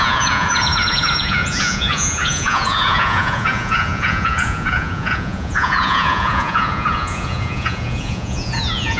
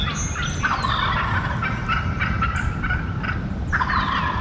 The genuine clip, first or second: second